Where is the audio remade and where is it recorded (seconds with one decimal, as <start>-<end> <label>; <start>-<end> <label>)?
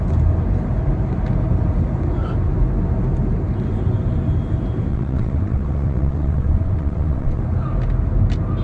0.0-4.9 recorded; 4.9-7.4 remade; 7.4-8.6 recorded